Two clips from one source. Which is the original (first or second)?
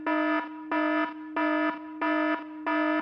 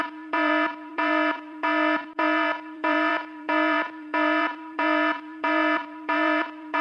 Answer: first